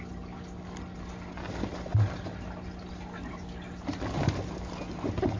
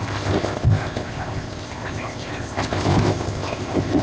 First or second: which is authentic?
first